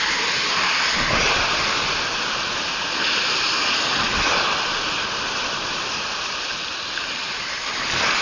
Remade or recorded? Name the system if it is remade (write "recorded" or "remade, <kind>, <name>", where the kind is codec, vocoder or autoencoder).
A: recorded